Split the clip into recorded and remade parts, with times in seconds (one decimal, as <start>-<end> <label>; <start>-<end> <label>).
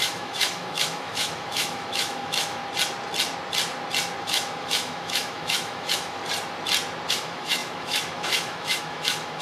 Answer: 0.0-2.6 remade; 2.6-4.2 recorded; 4.2-6.2 remade; 6.2-7.1 recorded; 7.1-9.4 remade